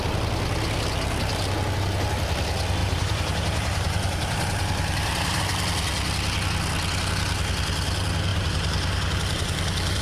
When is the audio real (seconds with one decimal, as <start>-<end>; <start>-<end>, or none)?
0.0-2.8; 5.4-8.3